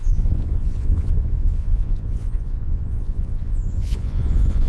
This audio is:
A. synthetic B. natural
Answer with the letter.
A